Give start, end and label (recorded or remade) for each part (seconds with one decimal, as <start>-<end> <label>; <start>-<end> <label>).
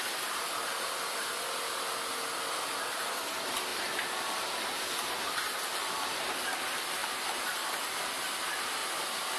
0.0-3.7 recorded; 3.7-6.3 remade; 6.3-7.0 recorded; 7.0-8.2 remade; 8.2-9.4 recorded